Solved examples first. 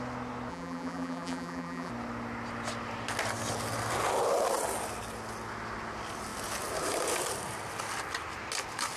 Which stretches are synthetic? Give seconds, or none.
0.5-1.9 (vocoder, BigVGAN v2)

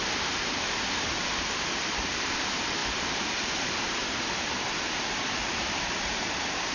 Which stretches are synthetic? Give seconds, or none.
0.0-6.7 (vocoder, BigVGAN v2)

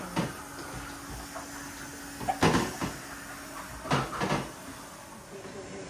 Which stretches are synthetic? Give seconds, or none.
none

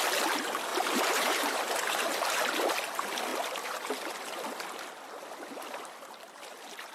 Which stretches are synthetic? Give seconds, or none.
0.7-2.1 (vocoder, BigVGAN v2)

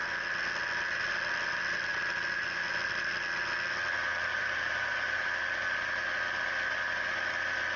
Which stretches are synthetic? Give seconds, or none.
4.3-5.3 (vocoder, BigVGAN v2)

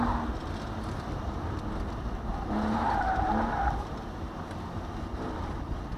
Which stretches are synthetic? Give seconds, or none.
2.3-3.3 (vocoder, BigVGAN v2)

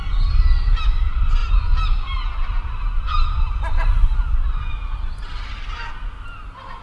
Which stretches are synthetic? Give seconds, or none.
none

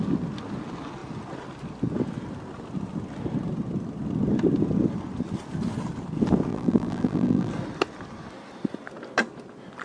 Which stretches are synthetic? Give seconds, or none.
6.5-7.5 (vocoder, BigVGAN v2)